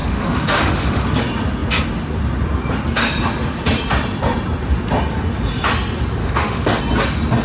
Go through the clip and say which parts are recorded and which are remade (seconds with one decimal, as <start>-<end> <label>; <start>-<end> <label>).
0.0-1.0 remade; 1.0-6.2 recorded; 6.2-6.8 remade; 6.8-7.4 recorded